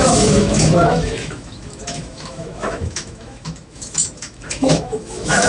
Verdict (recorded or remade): remade